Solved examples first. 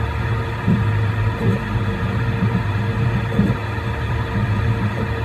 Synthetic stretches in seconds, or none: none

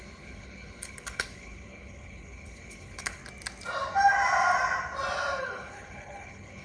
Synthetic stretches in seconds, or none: 0.0-3.2 (codec, HILCodec); 5.4-6.6